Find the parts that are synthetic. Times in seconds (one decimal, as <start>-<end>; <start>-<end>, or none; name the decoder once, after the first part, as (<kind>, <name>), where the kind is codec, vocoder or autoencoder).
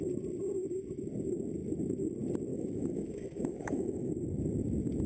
2.5-4.1 (autoencoder, DAC-VAE)